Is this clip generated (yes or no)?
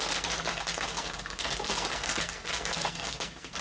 yes